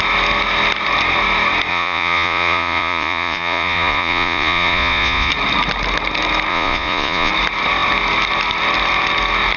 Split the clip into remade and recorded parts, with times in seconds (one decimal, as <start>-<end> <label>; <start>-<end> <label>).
0.0-1.7 recorded; 1.7-5.3 remade; 5.3-6.5 recorded; 6.5-7.3 remade; 7.3-9.6 recorded